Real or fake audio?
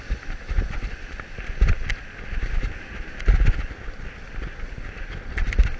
real